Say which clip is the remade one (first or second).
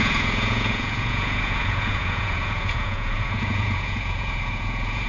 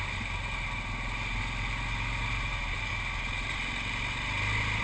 first